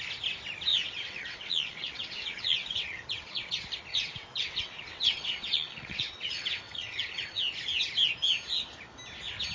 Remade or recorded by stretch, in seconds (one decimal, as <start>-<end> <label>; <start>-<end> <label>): 0.0-0.7 recorded; 0.7-3.5 remade; 3.5-3.9 recorded; 3.9-7.4 remade; 7.4-9.5 recorded